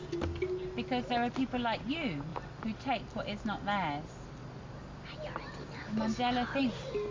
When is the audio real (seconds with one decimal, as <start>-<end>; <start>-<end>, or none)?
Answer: 0.0-7.1